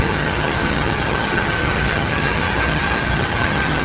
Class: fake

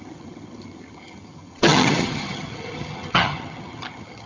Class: fake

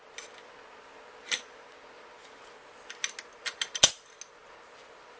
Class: real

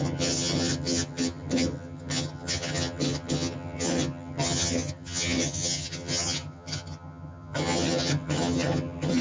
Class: fake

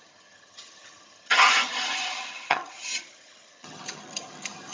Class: fake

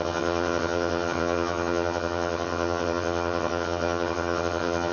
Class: fake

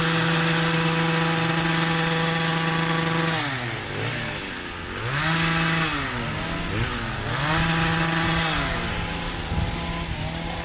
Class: real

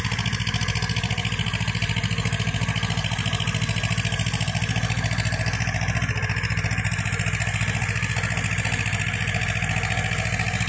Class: real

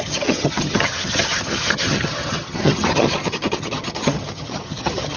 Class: fake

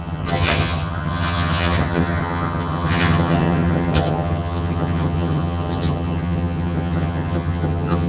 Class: fake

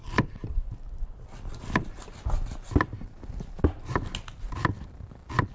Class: real